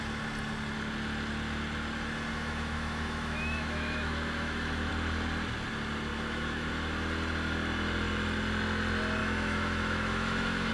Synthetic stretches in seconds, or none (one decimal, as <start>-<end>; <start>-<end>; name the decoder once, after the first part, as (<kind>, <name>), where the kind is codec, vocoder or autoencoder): 2.3-4.9 (autoencoder, DAC-VAE); 6.1-6.7; 9.2-10.7